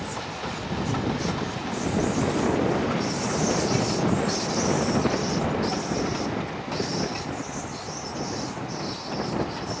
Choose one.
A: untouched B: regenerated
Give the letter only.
A